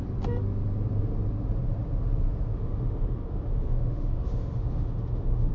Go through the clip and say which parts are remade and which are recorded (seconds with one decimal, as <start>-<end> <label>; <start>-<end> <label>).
0.0-2.5 recorded; 2.5-5.5 remade